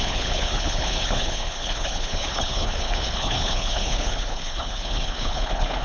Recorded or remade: remade